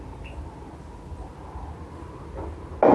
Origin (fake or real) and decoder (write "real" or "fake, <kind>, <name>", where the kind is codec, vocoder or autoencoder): real